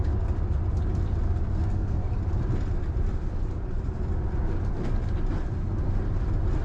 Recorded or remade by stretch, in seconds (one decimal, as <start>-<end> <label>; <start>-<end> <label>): 0.0-1.5 recorded; 1.5-2.1 remade; 2.1-6.6 recorded